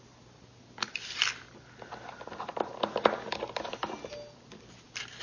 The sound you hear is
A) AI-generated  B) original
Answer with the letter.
B